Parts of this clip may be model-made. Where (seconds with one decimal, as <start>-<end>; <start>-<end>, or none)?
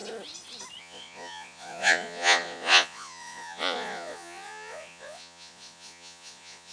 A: 0.8-6.7